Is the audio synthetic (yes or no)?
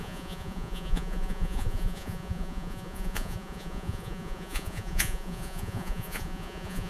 yes